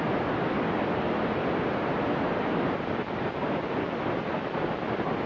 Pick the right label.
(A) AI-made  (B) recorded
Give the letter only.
B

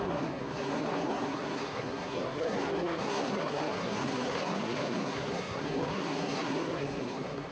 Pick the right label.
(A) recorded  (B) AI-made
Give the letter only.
B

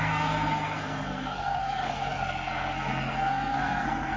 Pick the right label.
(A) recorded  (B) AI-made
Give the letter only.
B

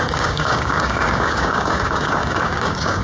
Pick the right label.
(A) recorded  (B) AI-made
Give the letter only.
B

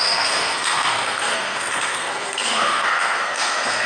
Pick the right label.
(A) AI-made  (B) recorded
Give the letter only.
A